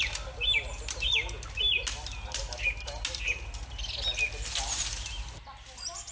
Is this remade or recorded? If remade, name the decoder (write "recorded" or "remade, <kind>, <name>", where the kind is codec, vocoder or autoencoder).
recorded